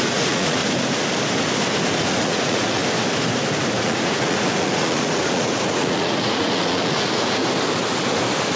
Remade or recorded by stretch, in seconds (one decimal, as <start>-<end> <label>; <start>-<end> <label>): 0.0-0.6 remade; 0.6-2.0 recorded; 2.0-2.8 remade; 2.8-3.8 recorded; 3.8-7.4 remade; 7.4-8.6 recorded